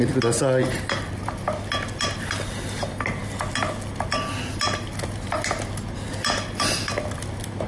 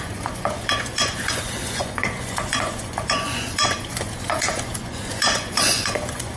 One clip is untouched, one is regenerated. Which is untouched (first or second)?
first